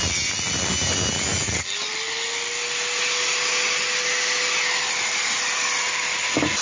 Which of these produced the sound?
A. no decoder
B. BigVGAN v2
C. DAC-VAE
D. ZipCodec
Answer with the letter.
A